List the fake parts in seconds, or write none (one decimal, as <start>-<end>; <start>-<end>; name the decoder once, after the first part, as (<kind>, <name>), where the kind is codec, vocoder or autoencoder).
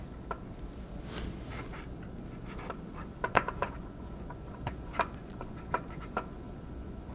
3.1-7.1 (vocoder, Vocos)